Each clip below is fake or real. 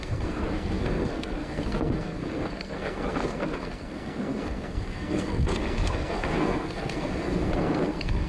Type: fake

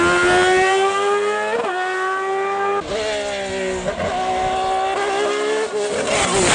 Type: real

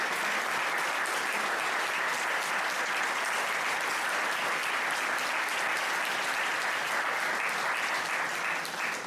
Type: real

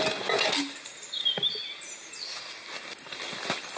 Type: real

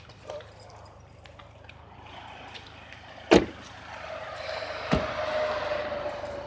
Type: real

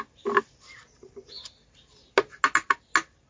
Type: real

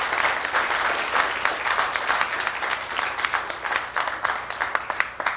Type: real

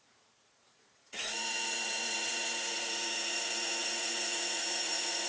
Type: fake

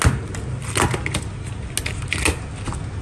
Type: real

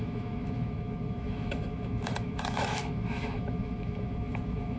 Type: fake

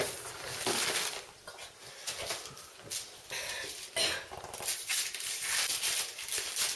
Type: real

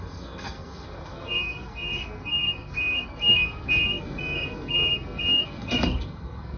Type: fake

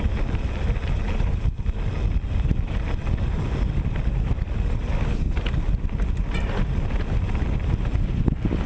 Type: real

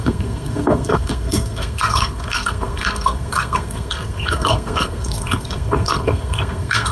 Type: fake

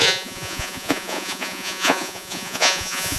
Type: fake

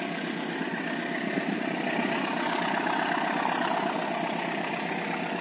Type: real